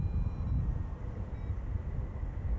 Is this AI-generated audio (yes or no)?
no